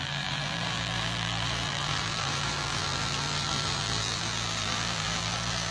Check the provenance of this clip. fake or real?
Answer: fake